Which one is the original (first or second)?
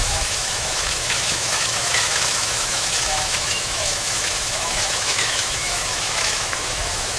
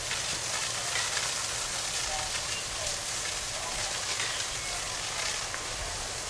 second